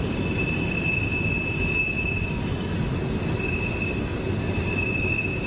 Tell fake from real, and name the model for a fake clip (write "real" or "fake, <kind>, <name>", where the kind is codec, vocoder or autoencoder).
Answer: real